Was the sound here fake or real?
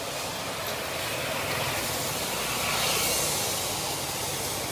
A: real